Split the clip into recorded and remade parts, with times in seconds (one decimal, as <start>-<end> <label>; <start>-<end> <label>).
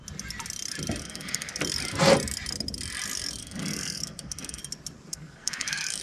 0.0-1.0 recorded; 1.0-1.6 remade; 1.6-3.4 recorded; 3.4-4.6 remade; 4.6-5.1 recorded; 5.1-6.0 remade